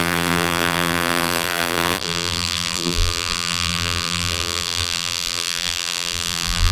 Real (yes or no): no